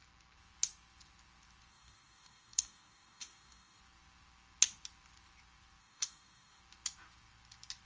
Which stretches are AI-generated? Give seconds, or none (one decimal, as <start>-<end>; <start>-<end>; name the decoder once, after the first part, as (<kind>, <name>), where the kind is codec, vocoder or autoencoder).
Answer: 1.7-3.8 (codec, DAC); 5.8-6.6